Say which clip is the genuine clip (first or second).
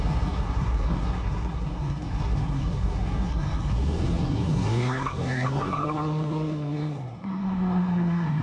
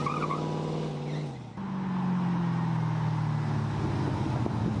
second